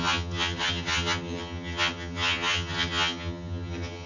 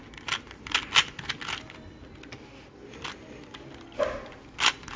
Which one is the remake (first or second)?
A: first